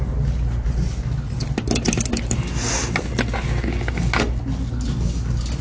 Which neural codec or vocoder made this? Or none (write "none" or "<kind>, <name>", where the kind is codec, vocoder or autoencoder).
none